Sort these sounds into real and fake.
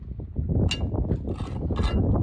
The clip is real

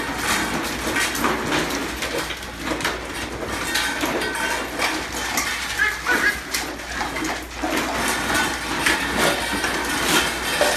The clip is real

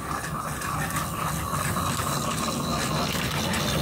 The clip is real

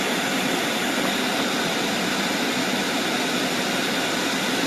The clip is real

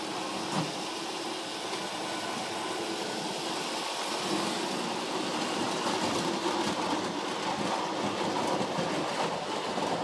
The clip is real